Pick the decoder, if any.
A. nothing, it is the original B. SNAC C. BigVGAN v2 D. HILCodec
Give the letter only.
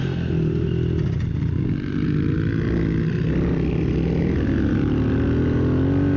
A